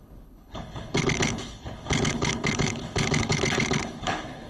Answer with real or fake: fake